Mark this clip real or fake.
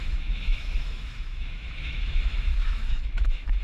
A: fake